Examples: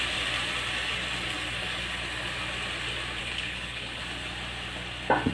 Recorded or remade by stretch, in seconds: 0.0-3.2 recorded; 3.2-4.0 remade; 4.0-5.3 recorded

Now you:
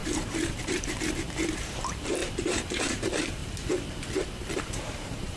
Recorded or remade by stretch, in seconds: 0.0-3.4 remade; 3.4-4.6 recorded; 4.6-5.4 remade